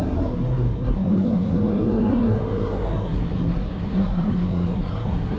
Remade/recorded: remade